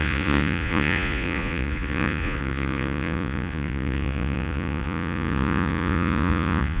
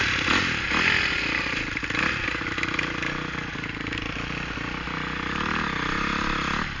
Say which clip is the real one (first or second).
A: second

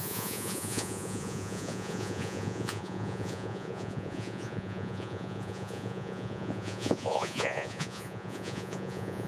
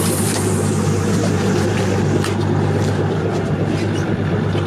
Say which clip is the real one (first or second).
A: second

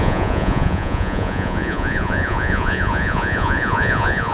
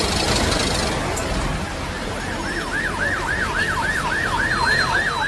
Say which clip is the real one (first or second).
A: second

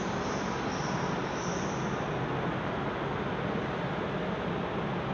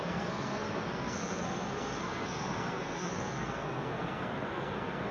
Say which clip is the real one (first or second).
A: first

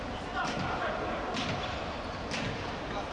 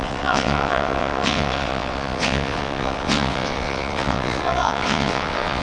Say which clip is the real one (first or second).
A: first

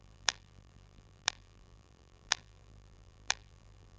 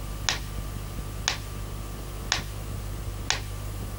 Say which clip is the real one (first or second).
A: second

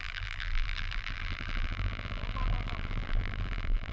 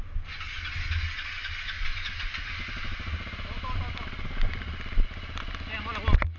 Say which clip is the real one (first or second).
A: second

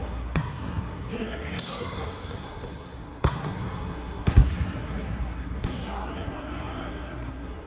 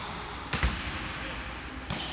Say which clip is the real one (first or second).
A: second